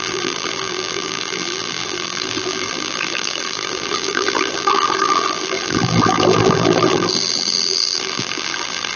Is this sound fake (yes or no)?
yes